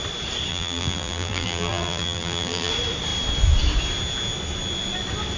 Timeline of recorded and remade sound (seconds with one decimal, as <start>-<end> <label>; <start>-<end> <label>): 0.0-0.5 recorded; 0.5-2.7 remade; 2.7-5.4 recorded